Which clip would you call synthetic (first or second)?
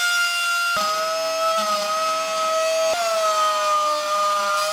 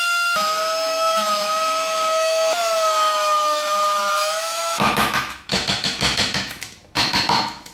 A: second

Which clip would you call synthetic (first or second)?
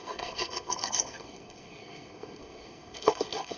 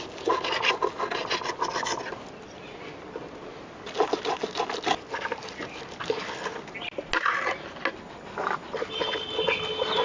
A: first